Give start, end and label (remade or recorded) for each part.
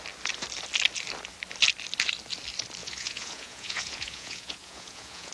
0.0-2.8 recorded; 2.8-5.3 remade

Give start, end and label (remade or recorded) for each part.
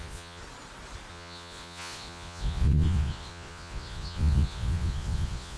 0.0-0.4 remade; 0.4-1.1 recorded; 1.1-5.6 remade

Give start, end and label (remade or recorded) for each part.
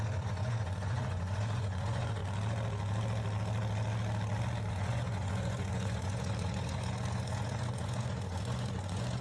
0.0-2.2 remade; 2.2-4.7 recorded; 4.7-9.2 remade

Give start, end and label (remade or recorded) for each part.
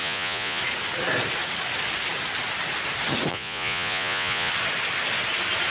0.0-0.6 remade; 0.6-3.3 recorded; 3.3-4.5 remade; 4.5-5.7 recorded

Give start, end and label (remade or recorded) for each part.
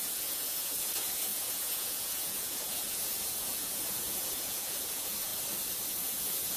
0.0-5.3 remade; 5.3-5.9 recorded; 5.9-6.6 remade